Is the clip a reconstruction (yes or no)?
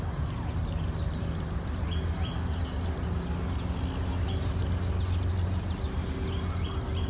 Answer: no